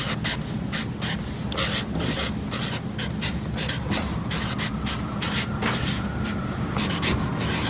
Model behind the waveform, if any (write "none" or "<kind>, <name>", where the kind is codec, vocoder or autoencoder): none